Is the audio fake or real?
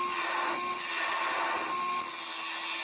real